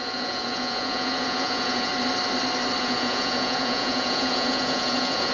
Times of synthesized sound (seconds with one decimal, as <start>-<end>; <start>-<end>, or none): 0.0-1.9; 2.8-5.3

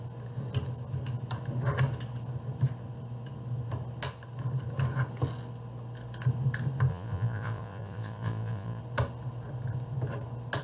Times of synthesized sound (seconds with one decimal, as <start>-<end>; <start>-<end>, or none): 6.9-8.8

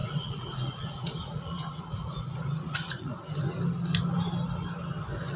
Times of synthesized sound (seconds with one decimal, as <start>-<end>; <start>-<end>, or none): 0.0-3.2

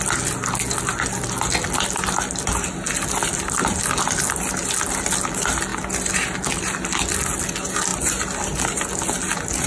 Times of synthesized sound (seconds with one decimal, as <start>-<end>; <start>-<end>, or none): none

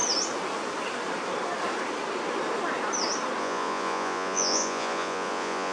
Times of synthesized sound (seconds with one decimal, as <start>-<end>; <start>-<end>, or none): 3.4-5.7

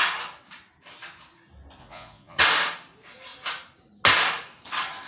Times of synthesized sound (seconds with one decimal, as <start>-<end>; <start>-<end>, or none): 1.8-2.4

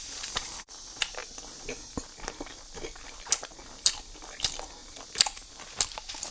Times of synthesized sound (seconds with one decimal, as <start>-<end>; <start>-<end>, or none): none